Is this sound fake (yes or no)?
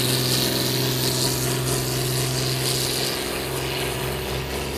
no